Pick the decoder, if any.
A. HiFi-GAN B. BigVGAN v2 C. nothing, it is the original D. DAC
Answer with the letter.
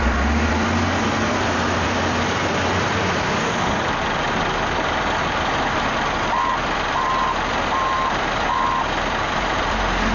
B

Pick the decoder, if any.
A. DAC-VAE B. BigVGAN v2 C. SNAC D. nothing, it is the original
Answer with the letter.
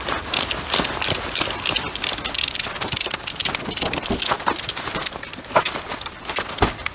B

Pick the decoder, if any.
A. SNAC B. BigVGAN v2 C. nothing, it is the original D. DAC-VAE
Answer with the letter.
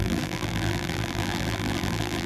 B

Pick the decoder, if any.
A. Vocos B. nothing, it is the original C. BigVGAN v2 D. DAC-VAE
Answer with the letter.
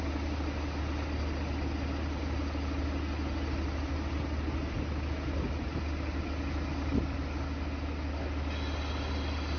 B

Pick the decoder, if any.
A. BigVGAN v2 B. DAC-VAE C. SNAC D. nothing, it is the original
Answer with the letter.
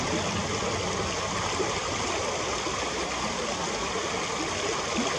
D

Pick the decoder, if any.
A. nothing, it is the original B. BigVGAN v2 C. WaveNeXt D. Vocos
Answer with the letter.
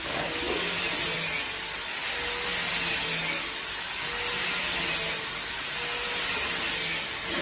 A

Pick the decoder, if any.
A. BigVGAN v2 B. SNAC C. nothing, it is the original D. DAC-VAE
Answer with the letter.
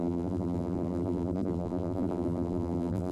A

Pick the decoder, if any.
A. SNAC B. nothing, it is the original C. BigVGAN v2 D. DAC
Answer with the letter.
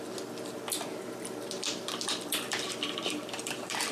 C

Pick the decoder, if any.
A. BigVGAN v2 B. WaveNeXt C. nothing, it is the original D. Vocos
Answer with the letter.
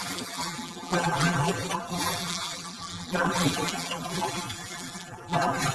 A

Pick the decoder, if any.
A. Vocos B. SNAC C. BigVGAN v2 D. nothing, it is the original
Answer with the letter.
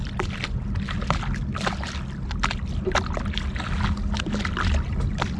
D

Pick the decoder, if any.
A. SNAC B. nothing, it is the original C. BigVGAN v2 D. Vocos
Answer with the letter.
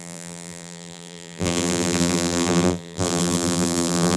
C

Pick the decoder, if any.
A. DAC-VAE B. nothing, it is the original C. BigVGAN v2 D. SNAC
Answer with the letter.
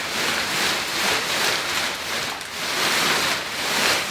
B